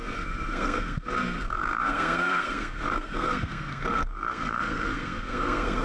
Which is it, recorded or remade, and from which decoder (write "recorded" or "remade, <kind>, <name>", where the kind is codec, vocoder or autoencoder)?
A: remade, codec, SNAC